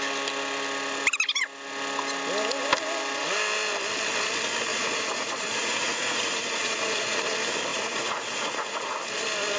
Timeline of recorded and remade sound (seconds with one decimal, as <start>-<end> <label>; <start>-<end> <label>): 0.0-4.7 recorded; 4.7-7.2 remade; 7.2-7.7 recorded; 7.7-9.0 remade; 9.0-9.6 recorded

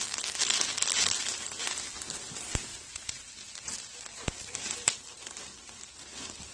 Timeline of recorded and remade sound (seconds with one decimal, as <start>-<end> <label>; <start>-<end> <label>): 0.0-2.7 recorded; 2.7-3.3 remade; 3.3-6.5 recorded

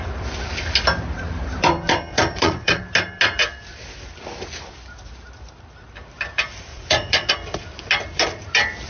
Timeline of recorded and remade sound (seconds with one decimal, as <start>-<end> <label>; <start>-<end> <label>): 0.0-2.1 recorded; 2.1-2.8 remade; 2.8-6.7 recorded; 6.7-7.3 remade; 7.3-8.9 recorded

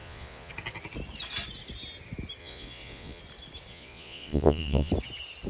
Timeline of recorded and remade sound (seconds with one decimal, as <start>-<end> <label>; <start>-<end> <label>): 0.0-0.5 remade; 0.5-2.4 recorded; 2.4-3.2 remade; 3.2-3.7 recorded; 3.7-4.9 remade; 4.9-5.5 recorded

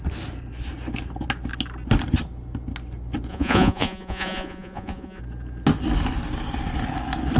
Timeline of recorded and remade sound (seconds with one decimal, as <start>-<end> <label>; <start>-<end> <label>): 0.0-3.3 recorded; 3.3-5.2 remade; 5.2-7.4 recorded

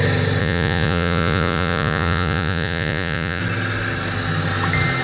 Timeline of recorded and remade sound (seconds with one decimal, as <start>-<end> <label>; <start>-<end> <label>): 0.0-0.4 recorded; 0.4-3.4 remade; 3.4-5.0 recorded